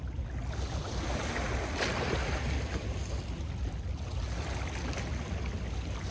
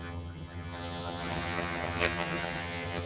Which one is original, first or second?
first